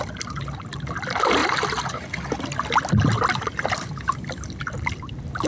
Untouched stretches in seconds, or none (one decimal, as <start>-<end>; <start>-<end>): 0.0-5.5